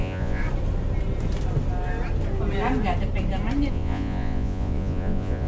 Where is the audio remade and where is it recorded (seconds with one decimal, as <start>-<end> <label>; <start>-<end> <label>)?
0.0-0.4 remade; 0.4-3.7 recorded; 3.7-5.5 remade